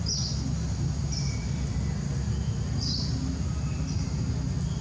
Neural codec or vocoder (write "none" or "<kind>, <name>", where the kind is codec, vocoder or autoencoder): none